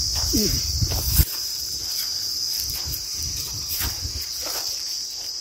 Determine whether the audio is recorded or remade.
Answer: remade